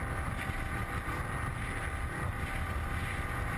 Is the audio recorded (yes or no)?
yes